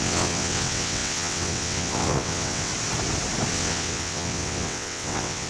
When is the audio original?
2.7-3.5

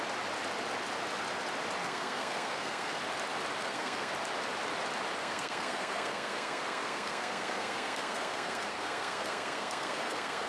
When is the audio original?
0.0-1.8; 3.0-3.6; 4.1-5.2

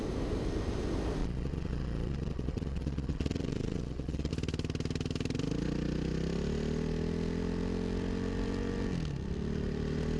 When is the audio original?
0.0-1.2; 4.3-10.2

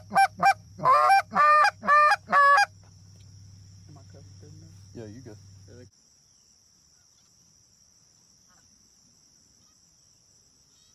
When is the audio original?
0.0-0.6; 2.1-10.9

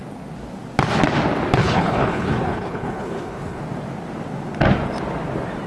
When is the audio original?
0.0-1.6; 3.6-5.7

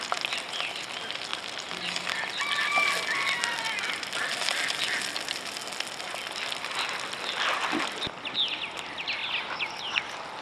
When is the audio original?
0.0-10.4

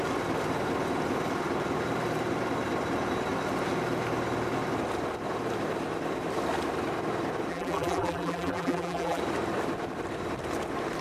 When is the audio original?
0.0-7.5; 9.2-11.0